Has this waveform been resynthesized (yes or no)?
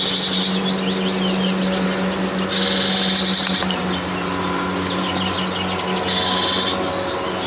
no